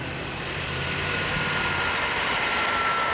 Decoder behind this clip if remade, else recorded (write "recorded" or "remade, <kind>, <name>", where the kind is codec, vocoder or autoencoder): recorded